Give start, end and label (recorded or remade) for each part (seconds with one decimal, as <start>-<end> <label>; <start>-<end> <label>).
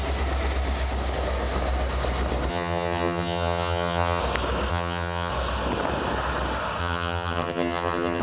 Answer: 0.0-2.5 recorded; 2.5-4.2 remade; 4.2-4.7 recorded; 4.7-5.3 remade; 5.3-6.8 recorded; 6.8-8.2 remade